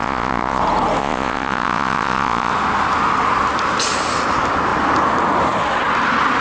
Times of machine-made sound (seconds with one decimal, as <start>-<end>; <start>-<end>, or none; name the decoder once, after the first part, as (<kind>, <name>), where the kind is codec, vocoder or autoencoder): 0.0-0.6 (vocoder, Vocos); 1.0-2.5